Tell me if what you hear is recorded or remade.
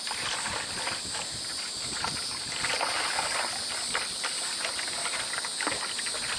recorded